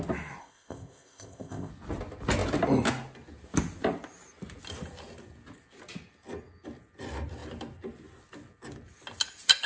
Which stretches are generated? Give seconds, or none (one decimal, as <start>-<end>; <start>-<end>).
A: 0.4-1.7